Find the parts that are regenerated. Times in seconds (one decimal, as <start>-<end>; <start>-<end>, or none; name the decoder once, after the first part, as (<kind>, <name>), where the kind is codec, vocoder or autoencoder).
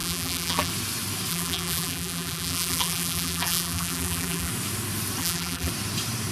0.0-0.7 (vocoder, BigVGAN v2); 1.3-4.5; 5.2-5.7